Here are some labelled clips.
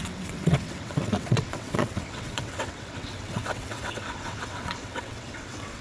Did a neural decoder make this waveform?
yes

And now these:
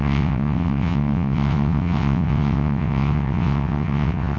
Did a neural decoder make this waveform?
yes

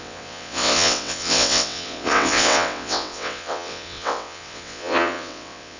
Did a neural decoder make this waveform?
yes